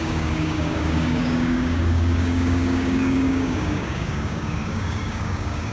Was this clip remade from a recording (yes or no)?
yes